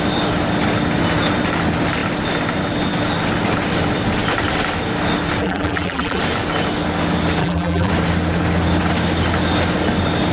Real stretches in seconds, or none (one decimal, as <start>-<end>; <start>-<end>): 0.0-5.4; 6.2-7.4; 7.9-10.3